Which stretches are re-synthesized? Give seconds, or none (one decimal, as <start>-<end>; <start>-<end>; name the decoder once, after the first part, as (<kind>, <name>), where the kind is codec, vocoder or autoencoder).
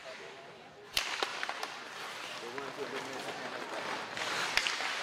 none